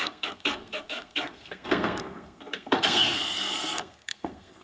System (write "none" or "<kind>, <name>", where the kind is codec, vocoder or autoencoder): codec, SNAC